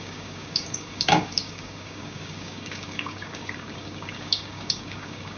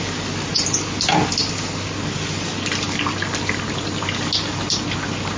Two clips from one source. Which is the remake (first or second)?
first